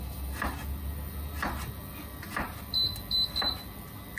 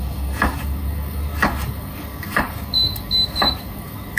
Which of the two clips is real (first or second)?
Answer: first